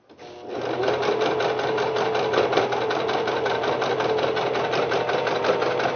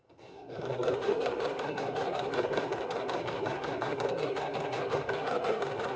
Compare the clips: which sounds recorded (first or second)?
first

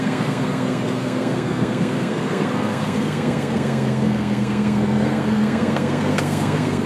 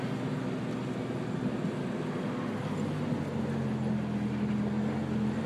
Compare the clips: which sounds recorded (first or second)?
second